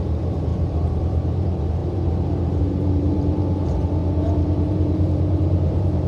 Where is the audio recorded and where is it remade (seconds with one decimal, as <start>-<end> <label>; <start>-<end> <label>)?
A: 0.0-6.1 remade